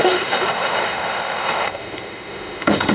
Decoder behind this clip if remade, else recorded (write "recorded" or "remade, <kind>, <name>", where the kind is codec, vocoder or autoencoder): remade, autoencoder, DAC-VAE